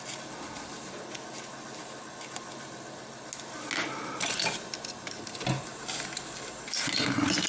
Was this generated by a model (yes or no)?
no